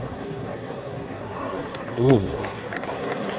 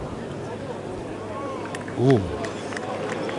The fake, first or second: first